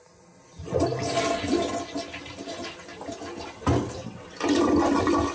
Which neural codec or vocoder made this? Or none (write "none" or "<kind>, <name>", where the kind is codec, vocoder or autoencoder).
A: none